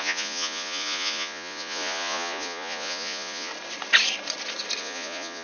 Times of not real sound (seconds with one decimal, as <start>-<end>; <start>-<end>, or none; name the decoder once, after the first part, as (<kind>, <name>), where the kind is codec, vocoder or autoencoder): 0.0-3.5 (vocoder, Vocos); 4.8-5.4